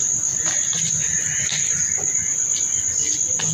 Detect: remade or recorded recorded